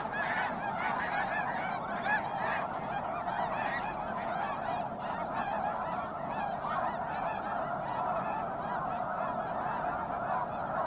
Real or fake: real